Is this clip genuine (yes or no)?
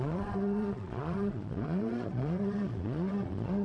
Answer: no